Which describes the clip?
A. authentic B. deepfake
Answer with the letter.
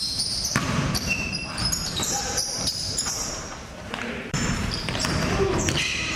B